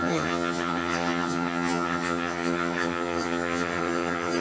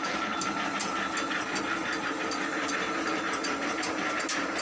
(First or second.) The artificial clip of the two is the first